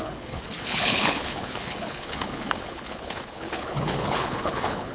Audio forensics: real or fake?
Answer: fake